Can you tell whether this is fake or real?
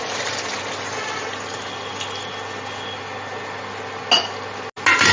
real